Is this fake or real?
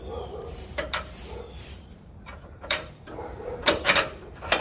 fake